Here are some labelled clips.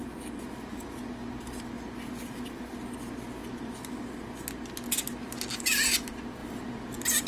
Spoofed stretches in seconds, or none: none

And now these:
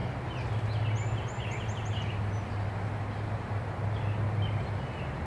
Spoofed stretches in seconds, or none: 0.0-3.2

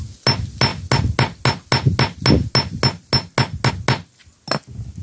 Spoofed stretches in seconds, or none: none

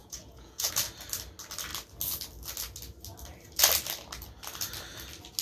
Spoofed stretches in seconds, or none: 0.0-0.7

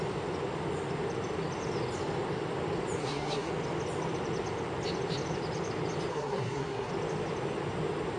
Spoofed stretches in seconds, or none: 3.0-3.5; 6.1-6.9

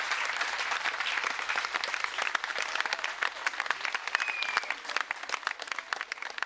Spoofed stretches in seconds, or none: 0.0-2.5